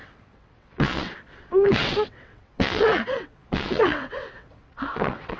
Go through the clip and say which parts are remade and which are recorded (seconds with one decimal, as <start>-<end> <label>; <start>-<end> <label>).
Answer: 0.0-5.4 remade